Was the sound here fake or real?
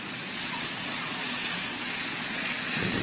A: fake